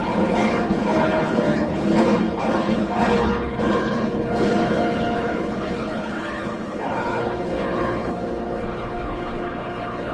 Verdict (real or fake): fake